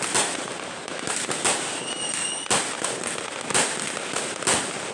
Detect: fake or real real